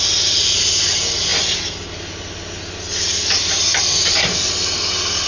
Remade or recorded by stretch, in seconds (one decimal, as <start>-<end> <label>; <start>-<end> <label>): 0.0-5.3 recorded